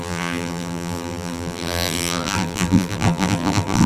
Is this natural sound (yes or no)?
no